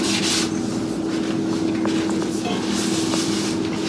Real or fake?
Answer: real